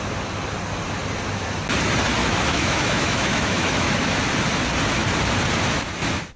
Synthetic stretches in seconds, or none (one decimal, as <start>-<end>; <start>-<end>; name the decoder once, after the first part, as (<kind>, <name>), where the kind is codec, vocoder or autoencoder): 2.2-4.2 (autoencoder, DAC-VAE)